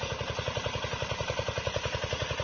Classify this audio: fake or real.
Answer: real